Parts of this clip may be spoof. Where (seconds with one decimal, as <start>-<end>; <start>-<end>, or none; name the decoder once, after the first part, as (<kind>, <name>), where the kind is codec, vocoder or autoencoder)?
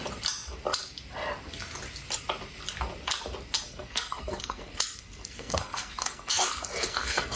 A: 3.7-7.4 (codec, SNAC)